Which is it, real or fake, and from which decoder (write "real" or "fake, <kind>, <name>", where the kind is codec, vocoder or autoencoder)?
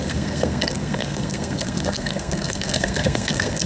fake, codec, SNAC